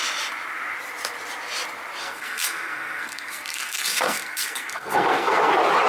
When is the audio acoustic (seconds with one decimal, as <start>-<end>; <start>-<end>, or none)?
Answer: 0.0-2.0; 5.5-5.9